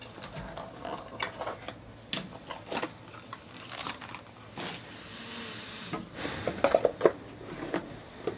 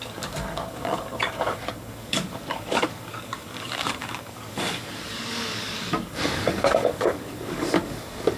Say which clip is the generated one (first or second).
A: second